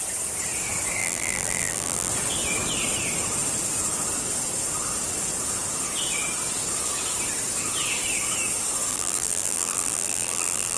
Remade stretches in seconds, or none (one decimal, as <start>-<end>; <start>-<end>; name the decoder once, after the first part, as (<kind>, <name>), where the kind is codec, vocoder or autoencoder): 1.0-2.1 (vocoder, BigVGAN v2); 8.9-10.8